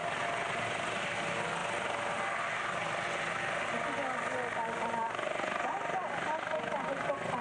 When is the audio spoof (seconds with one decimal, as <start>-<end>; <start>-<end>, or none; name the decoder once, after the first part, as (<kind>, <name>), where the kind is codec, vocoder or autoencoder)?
none